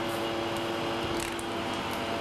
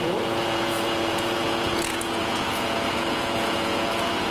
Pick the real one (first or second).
first